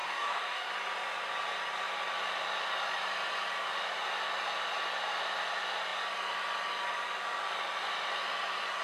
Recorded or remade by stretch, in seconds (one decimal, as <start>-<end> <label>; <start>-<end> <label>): 0.0-0.7 remade; 0.7-8.8 recorded